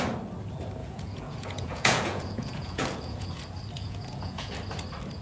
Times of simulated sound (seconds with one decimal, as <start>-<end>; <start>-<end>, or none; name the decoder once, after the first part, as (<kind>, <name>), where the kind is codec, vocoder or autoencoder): 0.8-3.4 (vocoder, Vocos); 3.8-4.5